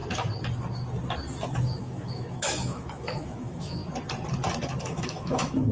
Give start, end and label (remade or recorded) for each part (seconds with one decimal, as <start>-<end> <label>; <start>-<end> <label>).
0.0-1.8 recorded; 1.8-3.8 remade; 3.8-4.8 recorded; 4.8-5.7 remade

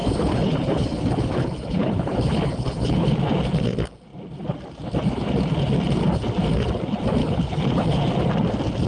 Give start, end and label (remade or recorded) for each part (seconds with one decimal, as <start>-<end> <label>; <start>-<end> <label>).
0.0-3.1 remade; 3.1-7.2 recorded; 7.2-8.0 remade; 8.0-8.9 recorded

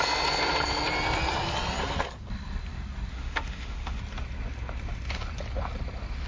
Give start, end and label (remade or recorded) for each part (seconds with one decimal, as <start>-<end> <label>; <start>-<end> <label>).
0.0-3.1 recorded; 3.1-4.0 remade; 4.0-6.3 recorded

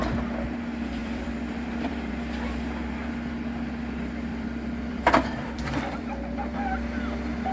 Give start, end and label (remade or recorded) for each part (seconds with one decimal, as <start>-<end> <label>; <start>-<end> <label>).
0.0-1.0 recorded; 1.0-2.1 remade; 2.1-4.3 recorded; 4.3-6.1 remade; 6.1-7.5 recorded

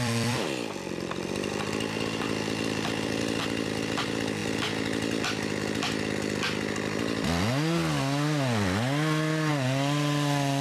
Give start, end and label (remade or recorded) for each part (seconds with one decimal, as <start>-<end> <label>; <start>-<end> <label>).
0.0-4.4 remade; 4.4-9.5 recorded; 9.5-10.6 remade

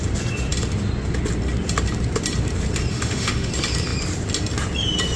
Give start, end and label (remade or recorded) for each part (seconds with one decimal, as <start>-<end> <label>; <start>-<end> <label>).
0.0-2.9 recorded; 2.9-3.5 remade; 3.5-5.2 recorded

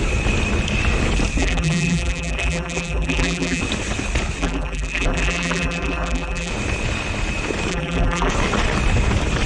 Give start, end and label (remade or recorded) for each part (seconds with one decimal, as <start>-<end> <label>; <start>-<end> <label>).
0.0-1.4 recorded; 1.4-3.6 remade; 3.6-4.4 recorded; 4.4-6.5 remade; 6.5-7.7 recorded; 7.7-8.3 remade; 8.3-9.5 recorded

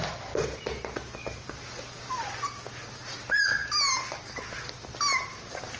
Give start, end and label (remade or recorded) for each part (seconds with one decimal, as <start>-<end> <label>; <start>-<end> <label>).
0.0-5.8 recorded